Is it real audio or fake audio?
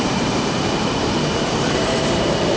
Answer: fake